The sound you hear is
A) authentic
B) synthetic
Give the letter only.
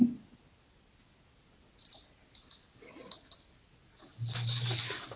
A